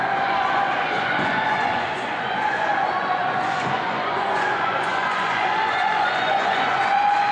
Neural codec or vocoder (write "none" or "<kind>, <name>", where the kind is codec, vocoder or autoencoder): vocoder, Vocos